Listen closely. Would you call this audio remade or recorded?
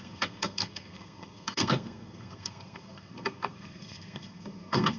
remade